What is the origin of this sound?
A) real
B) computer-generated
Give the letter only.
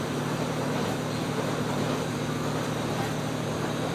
B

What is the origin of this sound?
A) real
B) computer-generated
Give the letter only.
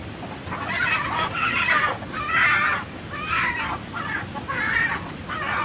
A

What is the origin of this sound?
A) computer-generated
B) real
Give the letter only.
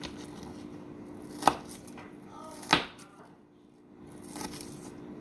B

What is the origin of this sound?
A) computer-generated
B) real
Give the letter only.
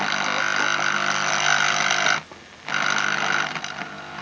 B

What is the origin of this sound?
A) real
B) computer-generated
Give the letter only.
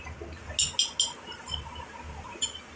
A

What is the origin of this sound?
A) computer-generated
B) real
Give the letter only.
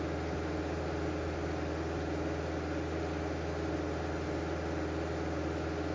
B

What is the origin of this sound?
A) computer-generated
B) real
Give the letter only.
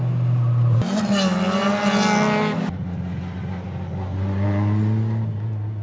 B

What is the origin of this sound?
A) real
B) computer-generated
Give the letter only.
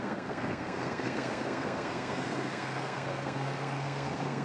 B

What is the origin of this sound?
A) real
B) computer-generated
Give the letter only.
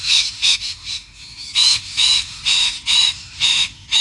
B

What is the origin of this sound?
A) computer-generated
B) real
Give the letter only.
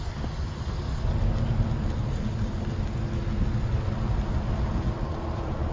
B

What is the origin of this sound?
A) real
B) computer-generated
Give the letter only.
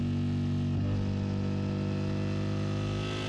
A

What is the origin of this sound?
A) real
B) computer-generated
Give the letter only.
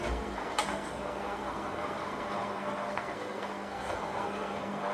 B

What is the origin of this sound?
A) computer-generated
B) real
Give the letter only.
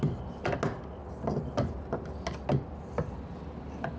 B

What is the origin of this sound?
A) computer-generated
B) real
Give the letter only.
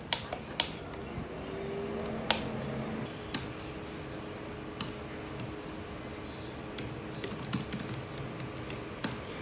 B